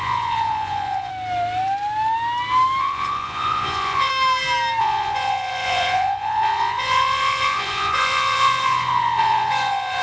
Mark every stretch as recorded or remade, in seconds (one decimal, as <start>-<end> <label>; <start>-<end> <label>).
0.0-1.1 remade; 1.1-2.8 recorded; 2.8-4.1 remade; 4.1-4.8 recorded; 4.8-10.0 remade